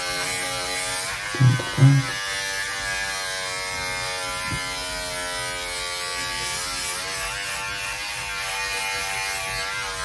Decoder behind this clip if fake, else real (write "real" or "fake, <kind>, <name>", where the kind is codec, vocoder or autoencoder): real